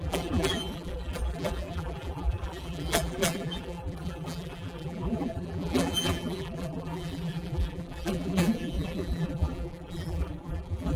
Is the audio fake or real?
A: fake